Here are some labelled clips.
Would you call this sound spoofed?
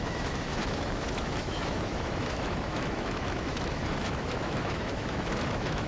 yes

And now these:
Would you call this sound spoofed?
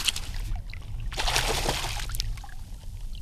no